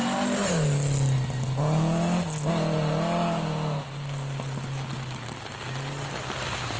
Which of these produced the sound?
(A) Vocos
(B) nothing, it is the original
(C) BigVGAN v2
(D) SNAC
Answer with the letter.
B